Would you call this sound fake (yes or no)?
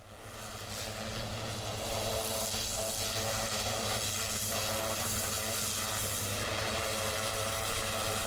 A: no